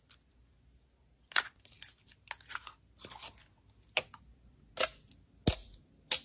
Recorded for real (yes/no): yes